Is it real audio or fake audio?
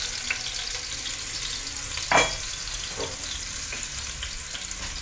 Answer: real